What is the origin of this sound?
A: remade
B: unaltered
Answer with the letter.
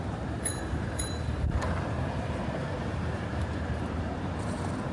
A